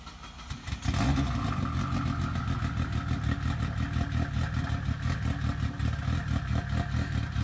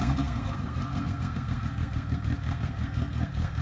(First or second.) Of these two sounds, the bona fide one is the first